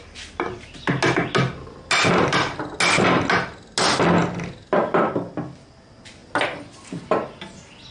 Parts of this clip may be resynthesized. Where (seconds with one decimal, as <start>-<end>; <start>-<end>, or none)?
none